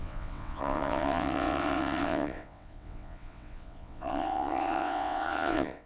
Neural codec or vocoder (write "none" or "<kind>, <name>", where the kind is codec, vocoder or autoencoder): vocoder, WaveNeXt